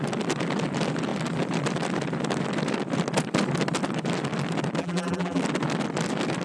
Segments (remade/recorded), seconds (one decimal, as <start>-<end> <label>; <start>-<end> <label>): 0.0-4.8 recorded; 4.8-5.4 remade; 5.4-6.4 recorded